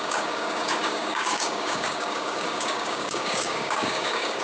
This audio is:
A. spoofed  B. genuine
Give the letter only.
A